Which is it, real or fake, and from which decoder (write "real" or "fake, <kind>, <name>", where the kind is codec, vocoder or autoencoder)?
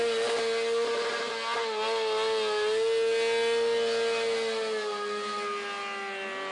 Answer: real